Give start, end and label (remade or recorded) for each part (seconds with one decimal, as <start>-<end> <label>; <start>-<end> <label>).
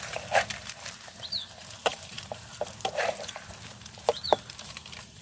0.0-1.8 recorded; 1.8-5.2 remade